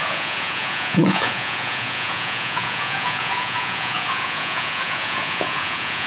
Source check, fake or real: fake